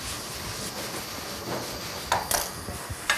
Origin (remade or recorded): recorded